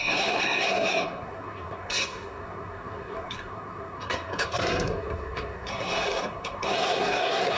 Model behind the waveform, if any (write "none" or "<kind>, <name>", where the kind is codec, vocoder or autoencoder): codec, SNAC